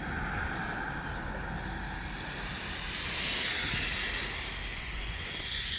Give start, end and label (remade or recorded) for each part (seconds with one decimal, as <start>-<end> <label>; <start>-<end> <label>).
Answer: 0.0-4.7 recorded; 4.7-5.8 remade

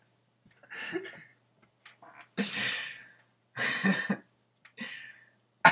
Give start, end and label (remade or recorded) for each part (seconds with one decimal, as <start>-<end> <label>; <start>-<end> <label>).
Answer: 0.0-5.7 recorded

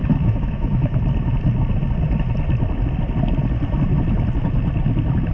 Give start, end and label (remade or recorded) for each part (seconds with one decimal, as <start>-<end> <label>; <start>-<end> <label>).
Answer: 0.0-1.0 remade; 1.0-5.3 recorded

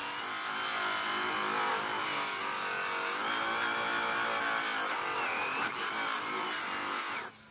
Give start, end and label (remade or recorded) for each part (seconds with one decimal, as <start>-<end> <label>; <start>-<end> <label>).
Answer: 0.0-7.5 recorded

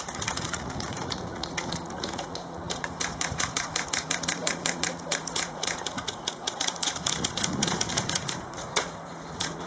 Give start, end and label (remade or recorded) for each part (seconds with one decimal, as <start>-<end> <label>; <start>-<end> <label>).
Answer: 0.0-9.7 remade

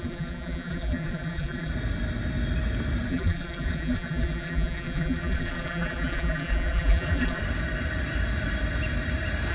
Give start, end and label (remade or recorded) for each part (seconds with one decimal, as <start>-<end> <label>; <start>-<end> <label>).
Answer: 0.0-1.7 remade; 1.7-3.1 recorded; 3.1-7.4 remade; 7.4-9.5 recorded

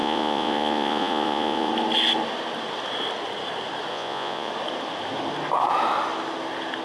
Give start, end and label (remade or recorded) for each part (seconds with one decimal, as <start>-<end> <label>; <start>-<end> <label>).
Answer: 0.0-1.7 remade; 1.7-3.9 recorded; 3.9-4.5 remade; 4.5-6.8 recorded